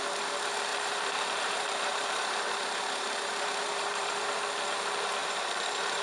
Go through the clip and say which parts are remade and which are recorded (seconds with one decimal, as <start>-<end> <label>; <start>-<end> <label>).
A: 0.0-0.7 recorded; 0.7-4.2 remade; 4.2-5.2 recorded; 5.2-6.0 remade